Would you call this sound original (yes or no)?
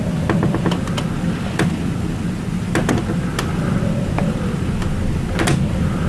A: yes